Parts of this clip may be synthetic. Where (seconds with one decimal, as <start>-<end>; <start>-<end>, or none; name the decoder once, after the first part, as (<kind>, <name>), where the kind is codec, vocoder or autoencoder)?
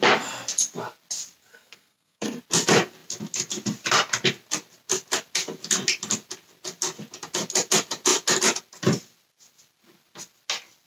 1.5-2.4 (codec, SNAC)